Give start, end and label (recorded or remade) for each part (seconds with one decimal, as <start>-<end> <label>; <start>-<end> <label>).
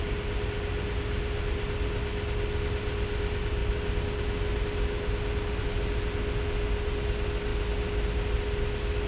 0.0-9.1 recorded